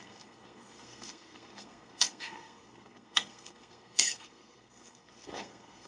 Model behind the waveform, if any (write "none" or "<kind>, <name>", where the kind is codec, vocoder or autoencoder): codec, SNAC